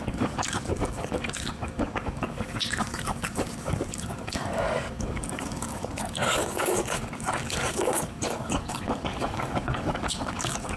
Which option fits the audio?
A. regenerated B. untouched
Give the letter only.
A